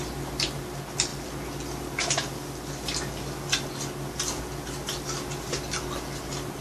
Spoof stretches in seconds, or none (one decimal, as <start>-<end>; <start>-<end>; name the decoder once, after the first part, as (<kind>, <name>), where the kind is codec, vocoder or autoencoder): none